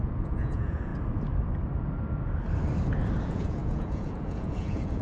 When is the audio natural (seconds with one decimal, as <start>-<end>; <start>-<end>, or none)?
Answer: 0.9-3.2